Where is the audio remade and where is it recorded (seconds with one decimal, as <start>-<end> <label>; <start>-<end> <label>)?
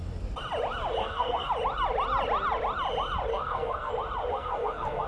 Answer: 0.0-1.0 recorded; 1.0-1.5 remade; 1.5-3.3 recorded; 3.3-3.9 remade; 3.9-4.3 recorded; 4.3-5.1 remade